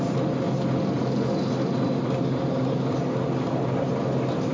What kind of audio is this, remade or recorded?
recorded